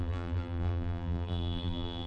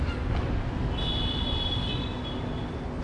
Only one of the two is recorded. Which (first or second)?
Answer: second